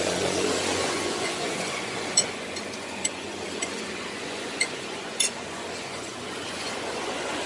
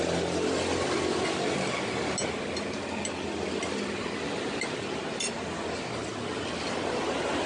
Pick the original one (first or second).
second